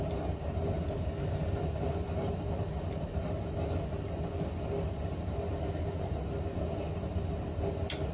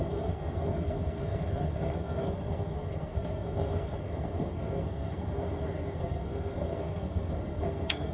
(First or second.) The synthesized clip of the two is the second